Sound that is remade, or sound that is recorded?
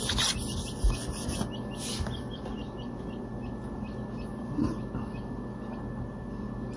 recorded